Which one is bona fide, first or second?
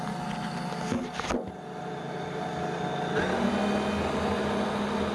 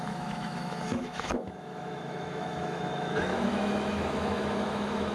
first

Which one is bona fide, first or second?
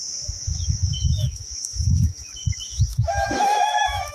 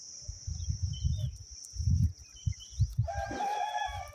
second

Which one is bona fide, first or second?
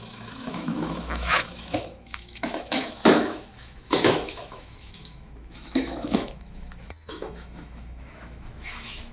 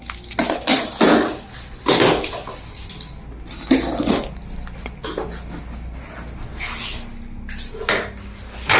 second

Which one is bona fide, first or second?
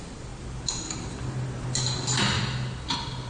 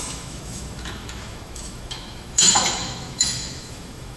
first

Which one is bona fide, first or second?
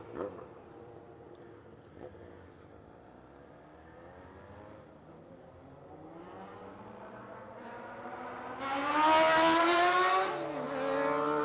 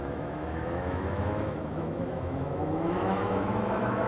first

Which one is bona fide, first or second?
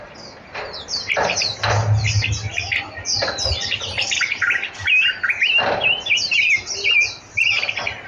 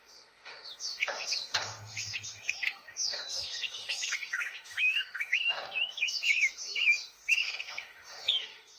first